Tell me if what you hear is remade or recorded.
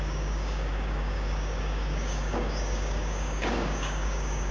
remade